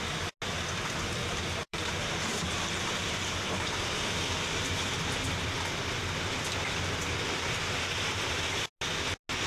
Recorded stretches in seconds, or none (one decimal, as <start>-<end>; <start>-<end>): 0.0-1.2; 4.2-9.5